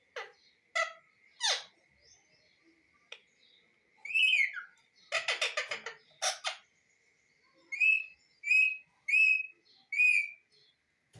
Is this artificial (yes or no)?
no